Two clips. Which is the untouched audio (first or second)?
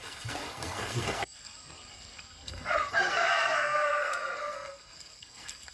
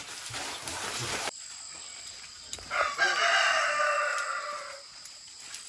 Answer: second